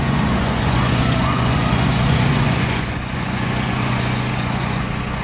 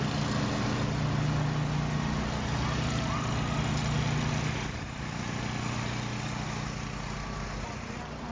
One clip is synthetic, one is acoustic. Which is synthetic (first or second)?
first